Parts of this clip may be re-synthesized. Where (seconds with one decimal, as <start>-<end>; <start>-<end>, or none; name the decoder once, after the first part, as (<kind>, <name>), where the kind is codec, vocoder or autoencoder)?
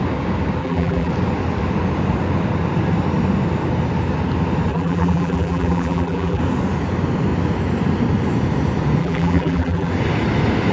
0.6-1.1 (vocoder, BigVGAN v2); 4.7-6.4; 9.0-9.9